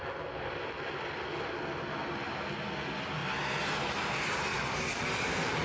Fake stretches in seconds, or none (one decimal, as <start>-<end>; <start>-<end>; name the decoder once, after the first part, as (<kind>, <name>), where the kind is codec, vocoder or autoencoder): none

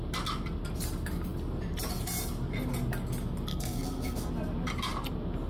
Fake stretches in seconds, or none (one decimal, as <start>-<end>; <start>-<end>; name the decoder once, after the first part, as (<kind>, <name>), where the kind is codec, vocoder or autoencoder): 3.5-4.3 (codec, SNAC)

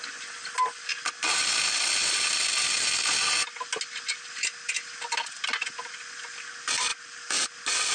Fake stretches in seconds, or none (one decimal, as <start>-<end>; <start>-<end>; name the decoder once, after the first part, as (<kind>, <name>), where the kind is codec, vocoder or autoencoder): none